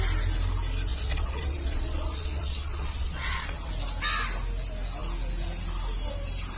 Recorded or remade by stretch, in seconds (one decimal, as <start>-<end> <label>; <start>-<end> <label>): 0.0-0.9 recorded; 0.9-3.7 remade; 3.7-6.6 recorded